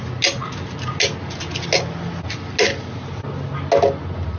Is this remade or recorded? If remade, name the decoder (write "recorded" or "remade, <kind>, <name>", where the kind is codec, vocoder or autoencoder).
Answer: recorded